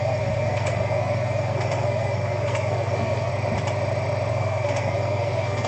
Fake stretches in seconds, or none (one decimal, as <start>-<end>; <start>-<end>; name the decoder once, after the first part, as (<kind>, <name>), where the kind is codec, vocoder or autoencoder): 0.0-3.3 (codec, SNAC); 4.3-5.7